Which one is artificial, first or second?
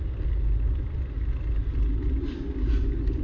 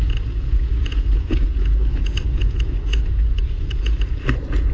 second